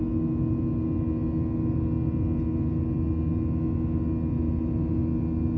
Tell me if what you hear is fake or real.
real